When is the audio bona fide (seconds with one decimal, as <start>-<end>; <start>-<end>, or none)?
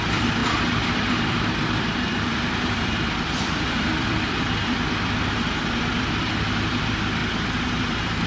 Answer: 7.2-7.8